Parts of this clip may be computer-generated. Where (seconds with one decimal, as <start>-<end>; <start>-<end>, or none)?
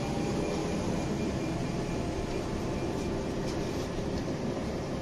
0.0-0.6; 3.5-5.0